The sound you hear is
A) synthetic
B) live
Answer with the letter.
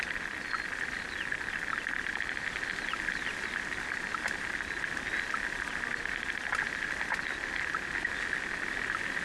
B